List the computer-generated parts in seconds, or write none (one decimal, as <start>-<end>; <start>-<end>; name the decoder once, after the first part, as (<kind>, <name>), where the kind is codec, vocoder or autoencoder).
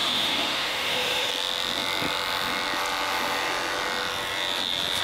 0.0-1.3 (autoencoder, DAC-VAE)